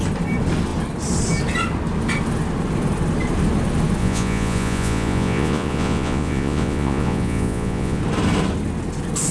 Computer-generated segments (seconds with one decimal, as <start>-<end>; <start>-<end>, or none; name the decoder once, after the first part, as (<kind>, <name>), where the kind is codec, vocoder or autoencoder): 4.0-8.0 (vocoder, Vocos)